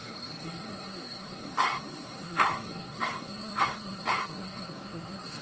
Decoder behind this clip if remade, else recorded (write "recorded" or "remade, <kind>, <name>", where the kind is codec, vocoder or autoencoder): remade, codec, SNAC